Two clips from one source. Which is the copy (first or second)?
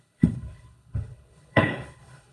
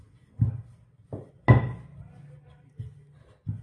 first